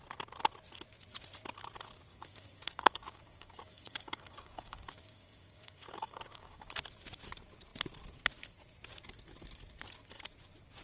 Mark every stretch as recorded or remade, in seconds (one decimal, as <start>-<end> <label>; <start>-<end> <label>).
0.0-2.1 recorded; 2.1-6.7 remade; 6.7-10.8 recorded